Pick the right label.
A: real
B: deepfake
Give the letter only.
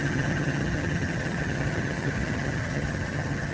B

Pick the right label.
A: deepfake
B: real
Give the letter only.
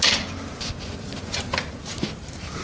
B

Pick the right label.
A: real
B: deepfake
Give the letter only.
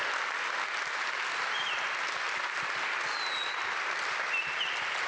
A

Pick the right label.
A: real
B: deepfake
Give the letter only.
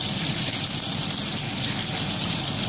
A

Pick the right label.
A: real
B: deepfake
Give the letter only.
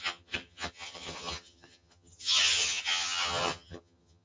B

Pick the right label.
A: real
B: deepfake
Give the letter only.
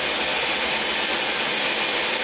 A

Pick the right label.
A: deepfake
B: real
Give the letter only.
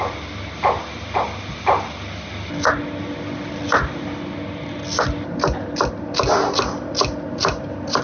B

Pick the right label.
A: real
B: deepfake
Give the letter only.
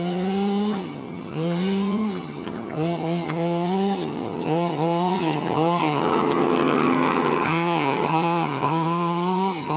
B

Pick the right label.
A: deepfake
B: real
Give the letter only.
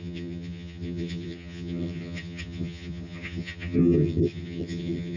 A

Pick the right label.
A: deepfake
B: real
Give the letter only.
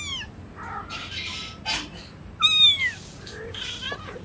B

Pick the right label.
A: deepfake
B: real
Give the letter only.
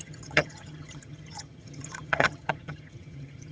A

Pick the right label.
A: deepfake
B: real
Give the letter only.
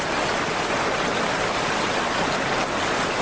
B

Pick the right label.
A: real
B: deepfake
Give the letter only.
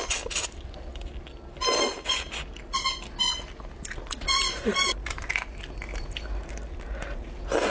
A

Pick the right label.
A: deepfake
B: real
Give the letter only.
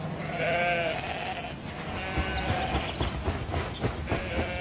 B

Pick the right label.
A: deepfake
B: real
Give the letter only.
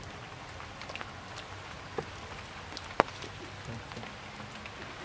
B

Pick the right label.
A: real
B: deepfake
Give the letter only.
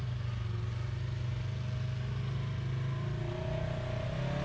A